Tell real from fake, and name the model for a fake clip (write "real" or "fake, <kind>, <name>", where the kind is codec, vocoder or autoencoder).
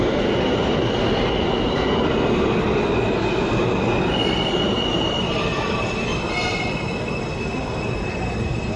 real